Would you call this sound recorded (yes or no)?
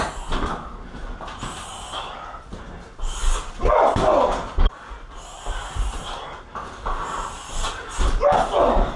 yes